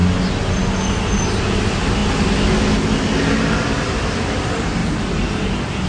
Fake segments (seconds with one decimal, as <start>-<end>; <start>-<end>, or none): 4.8-5.9

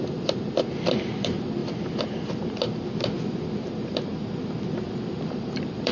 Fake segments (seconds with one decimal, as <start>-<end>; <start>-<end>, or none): 0.0-1.6; 5.1-5.9

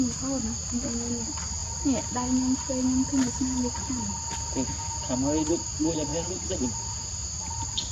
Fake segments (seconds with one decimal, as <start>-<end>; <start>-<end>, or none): none

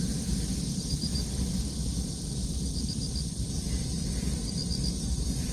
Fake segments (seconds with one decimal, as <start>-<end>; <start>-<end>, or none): 0.0-1.8; 5.1-5.5

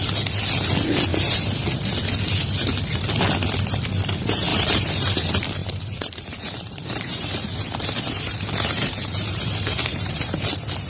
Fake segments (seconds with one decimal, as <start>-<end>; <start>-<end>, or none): 4.5-5.1; 5.6-10.5

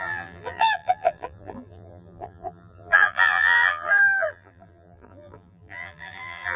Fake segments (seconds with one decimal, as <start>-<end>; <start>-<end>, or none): 0.0-6.6